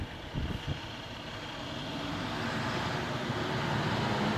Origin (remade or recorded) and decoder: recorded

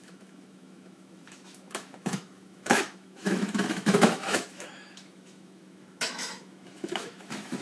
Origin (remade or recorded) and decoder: remade, autoencoder, DAC-VAE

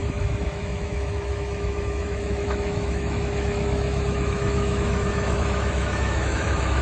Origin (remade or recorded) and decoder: remade, autoencoder, DAC-VAE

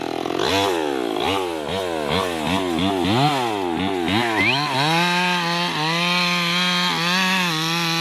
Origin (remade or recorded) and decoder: recorded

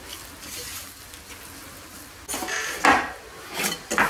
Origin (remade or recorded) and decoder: recorded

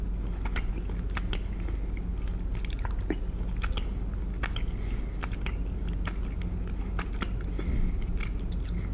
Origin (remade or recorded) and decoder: recorded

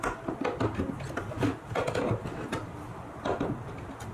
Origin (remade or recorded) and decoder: recorded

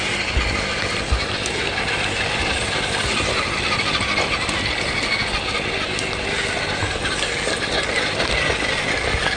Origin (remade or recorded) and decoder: recorded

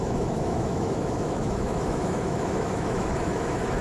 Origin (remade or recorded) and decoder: remade, autoencoder, DAC-VAE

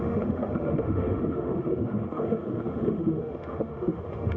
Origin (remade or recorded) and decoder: remade, autoencoder, DAC-VAE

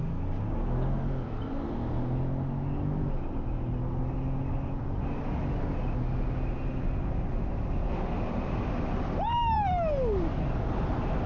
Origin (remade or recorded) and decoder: recorded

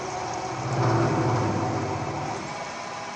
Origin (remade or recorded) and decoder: recorded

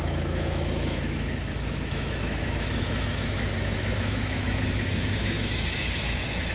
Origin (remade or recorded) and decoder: remade, autoencoder, DAC-VAE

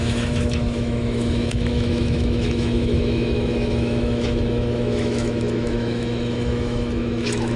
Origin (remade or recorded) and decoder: remade, autoencoder, DAC-VAE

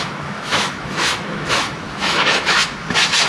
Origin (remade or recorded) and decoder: remade, autoencoder, DAC-VAE